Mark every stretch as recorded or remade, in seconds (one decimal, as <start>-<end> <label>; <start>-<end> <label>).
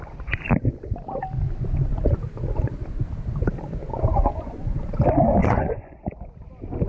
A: 0.0-3.8 recorded; 3.8-4.8 remade; 4.8-5.4 recorded; 5.4-6.3 remade; 6.3-6.9 recorded